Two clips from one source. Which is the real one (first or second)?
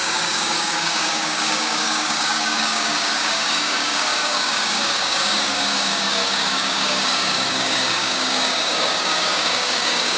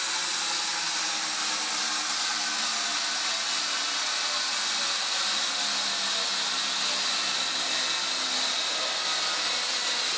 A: second